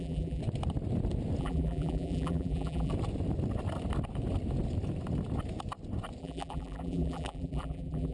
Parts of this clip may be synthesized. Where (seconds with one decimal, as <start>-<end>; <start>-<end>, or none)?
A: 0.0-0.4; 1.4-2.9; 6.2-8.1